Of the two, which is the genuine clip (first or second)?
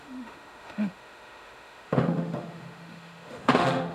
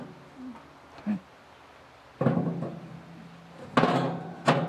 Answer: second